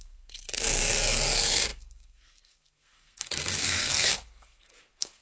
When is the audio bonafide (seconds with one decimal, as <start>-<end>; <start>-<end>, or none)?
none